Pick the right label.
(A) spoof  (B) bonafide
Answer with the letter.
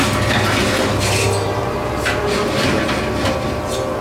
B